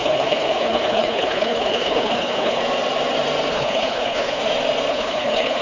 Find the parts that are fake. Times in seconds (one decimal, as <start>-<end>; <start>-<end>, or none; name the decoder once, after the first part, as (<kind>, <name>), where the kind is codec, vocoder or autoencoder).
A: 0.0-2.6 (codec, HILCodec); 3.5-4.4; 4.9-5.6